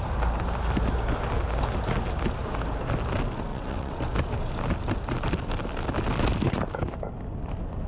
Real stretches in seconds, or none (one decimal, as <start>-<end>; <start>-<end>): 0.0-3.5; 4.0-7.9